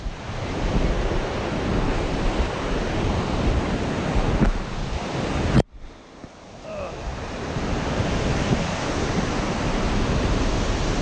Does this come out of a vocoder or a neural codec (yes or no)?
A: no